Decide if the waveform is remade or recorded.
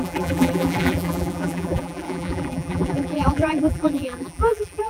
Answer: remade